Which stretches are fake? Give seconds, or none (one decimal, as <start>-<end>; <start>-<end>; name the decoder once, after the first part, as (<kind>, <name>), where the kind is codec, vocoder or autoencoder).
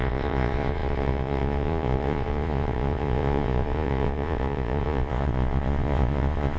0.0-6.6 (vocoder, Vocos)